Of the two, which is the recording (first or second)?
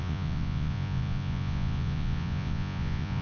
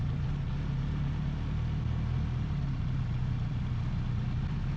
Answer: second